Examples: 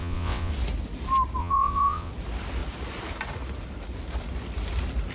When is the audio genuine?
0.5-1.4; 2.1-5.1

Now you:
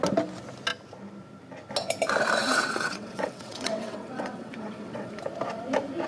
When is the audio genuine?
0.0-2.4; 5.1-6.1